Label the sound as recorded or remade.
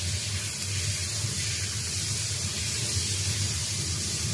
recorded